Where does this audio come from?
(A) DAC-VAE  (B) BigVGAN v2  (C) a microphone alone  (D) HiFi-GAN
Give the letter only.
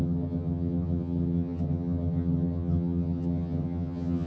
D